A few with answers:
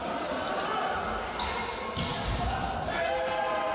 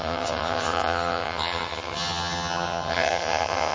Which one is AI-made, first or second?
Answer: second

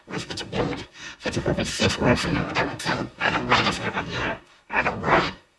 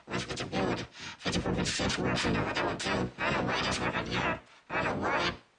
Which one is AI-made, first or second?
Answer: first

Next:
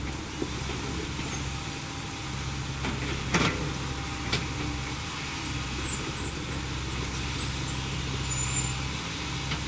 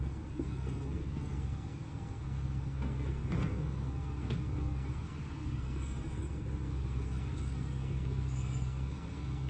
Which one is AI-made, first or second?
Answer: second